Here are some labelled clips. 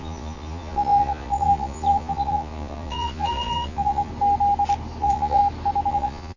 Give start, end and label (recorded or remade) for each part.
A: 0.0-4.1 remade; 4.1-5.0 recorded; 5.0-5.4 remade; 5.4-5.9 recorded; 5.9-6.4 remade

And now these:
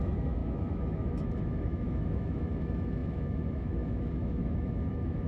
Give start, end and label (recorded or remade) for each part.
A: 0.0-5.3 remade

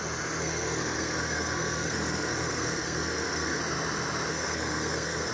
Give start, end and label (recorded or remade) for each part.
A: 0.0-0.4 recorded; 0.4-3.6 remade; 3.6-4.3 recorded; 4.3-5.3 remade

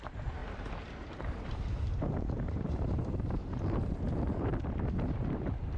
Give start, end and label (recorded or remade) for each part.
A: 0.0-0.4 remade; 0.4-1.0 recorded; 1.0-4.5 remade; 4.5-5.2 recorded; 5.2-5.8 remade

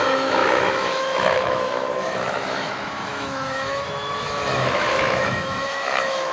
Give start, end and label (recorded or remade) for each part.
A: 0.0-6.3 remade

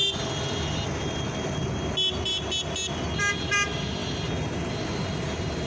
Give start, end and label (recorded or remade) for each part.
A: 0.0-5.7 recorded

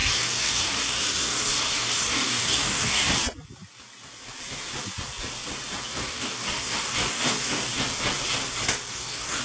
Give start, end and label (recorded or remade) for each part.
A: 0.0-3.0 remade; 3.0-5.9 recorded; 5.9-7.7 remade; 7.7-8.9 recorded; 8.9-9.4 remade